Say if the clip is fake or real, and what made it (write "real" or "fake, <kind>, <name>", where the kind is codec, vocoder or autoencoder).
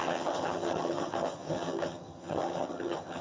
fake, vocoder, HiFi-GAN